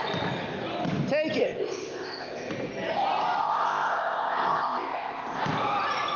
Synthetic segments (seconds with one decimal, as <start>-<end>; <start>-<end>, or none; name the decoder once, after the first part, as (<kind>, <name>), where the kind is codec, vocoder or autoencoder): 1.4-2.5 (codec, ZipCodec); 3.4-5.4